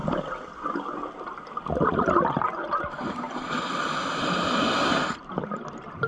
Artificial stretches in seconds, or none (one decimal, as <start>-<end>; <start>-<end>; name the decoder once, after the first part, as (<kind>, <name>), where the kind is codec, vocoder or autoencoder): none